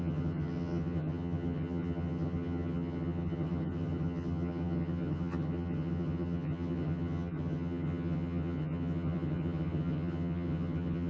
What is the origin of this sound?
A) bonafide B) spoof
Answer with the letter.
B